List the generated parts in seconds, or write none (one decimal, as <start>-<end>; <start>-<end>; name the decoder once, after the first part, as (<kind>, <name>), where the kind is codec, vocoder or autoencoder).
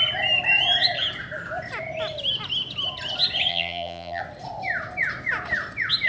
3.5-4.2 (vocoder, BigVGAN v2)